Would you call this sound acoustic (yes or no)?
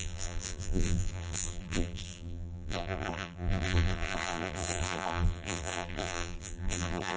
no